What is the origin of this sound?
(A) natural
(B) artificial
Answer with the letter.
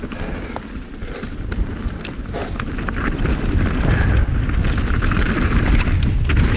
B